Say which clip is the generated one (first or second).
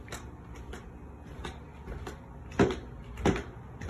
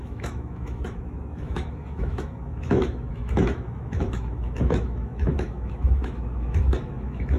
second